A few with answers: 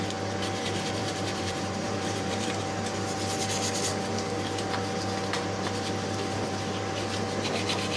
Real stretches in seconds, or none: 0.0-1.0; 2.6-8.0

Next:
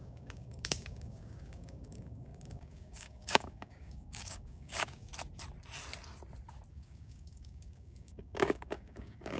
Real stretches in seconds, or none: 5.1-6.7

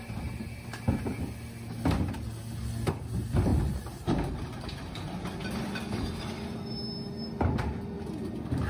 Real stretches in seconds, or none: 0.0-3.5; 5.1-8.7

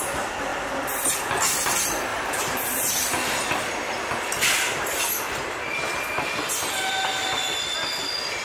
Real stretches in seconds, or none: 0.0-2.1; 2.9-8.4

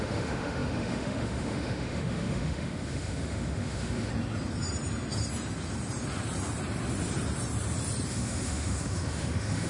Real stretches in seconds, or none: 4.1-8.1

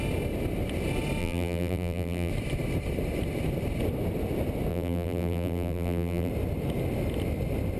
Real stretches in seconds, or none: 0.0-1.2; 2.3-4.7; 6.3-7.8